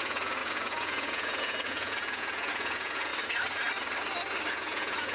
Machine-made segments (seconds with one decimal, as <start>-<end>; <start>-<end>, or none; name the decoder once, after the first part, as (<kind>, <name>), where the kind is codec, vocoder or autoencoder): 0.0-3.1 (vocoder, Vocos); 4.5-5.1